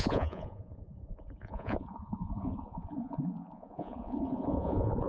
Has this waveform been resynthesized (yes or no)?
yes